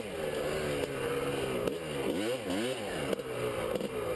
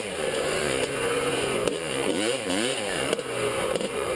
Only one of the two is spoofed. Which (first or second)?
second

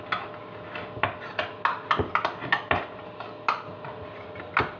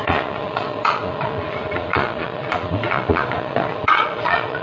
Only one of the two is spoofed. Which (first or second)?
second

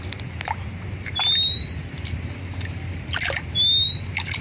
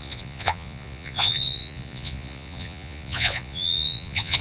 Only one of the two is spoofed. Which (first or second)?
second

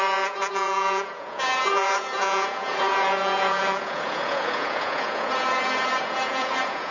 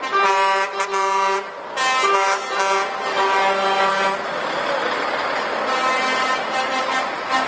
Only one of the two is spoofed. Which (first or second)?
first